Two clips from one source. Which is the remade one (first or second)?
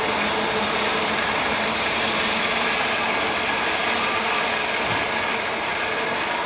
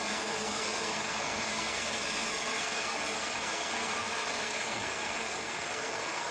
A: second